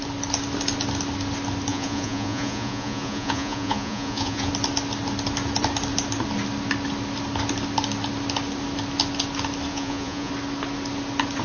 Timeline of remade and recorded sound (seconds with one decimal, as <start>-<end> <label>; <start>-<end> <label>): 0.0-1.7 recorded; 1.7-4.5 remade; 4.5-9.7 recorded; 9.7-10.3 remade; 10.3-11.4 recorded

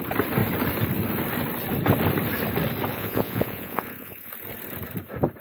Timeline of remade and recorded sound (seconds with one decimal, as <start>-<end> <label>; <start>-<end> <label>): 0.0-2.9 recorded; 2.9-4.3 remade; 4.3-5.4 recorded

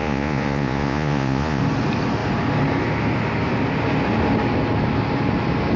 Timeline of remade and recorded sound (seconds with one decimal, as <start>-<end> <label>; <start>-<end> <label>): 0.0-1.6 remade; 1.6-5.8 recorded